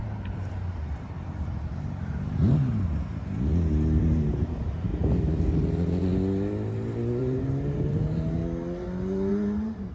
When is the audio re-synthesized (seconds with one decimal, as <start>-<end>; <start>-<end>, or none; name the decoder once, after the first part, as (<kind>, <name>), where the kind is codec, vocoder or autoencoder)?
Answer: 0.0-2.4 (vocoder, BigVGAN v2); 4.3-4.9; 7.2-8.4; 9.3-9.9